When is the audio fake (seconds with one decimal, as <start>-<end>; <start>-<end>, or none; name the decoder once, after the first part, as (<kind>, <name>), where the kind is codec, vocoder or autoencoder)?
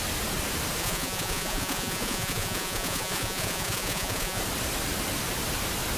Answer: 0.8-4.4 (vocoder, Vocos)